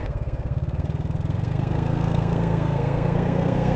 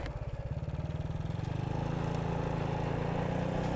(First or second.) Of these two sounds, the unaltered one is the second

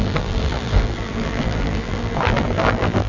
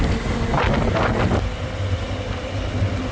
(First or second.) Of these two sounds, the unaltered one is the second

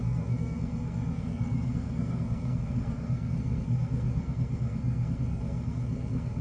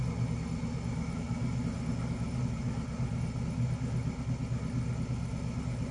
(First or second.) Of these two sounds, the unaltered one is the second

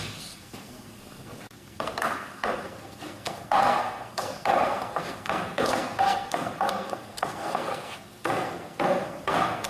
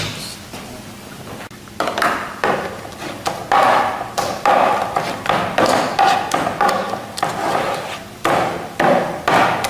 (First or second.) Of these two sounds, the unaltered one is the second